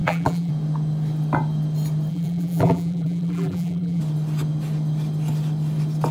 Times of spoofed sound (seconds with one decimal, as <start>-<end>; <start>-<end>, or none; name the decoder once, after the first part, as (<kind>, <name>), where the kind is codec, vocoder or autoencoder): 0.0-0.5 (vocoder, BigVGAN v2); 2.1-4.0